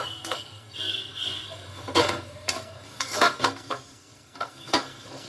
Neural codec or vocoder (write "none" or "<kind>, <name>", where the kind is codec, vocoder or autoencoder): codec, SNAC